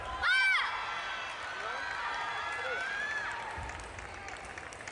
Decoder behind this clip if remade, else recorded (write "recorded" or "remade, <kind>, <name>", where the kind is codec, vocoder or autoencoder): recorded